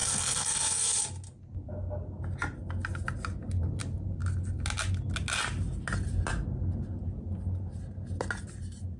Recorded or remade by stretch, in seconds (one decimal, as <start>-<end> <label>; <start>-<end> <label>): 0.0-1.0 remade; 1.0-9.0 recorded